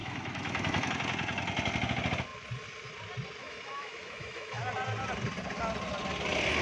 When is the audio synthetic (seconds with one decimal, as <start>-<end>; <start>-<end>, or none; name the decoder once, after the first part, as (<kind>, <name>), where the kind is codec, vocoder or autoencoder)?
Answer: 0.0-0.9 (autoencoder, DAC-VAE); 3.4-4.6